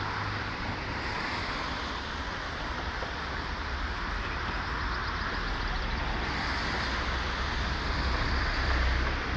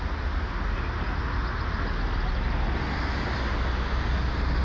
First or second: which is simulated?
first